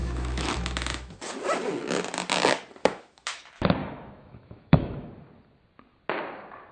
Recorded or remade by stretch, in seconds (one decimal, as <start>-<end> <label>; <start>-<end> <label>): 0.0-1.2 remade; 1.2-2.8 recorded; 2.8-3.4 remade; 3.4-3.8 recorded; 3.8-5.1 remade; 5.1-6.7 recorded